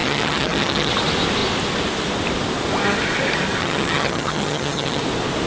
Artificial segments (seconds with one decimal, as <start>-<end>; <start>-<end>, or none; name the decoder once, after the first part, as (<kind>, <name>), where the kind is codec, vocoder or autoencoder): 0.0-0.9 (vocoder, HiFi-GAN); 3.6-5.0